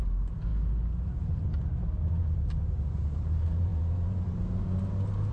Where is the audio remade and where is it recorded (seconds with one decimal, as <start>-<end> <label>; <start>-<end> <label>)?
0.0-0.5 remade; 0.5-2.7 recorded; 2.7-5.3 remade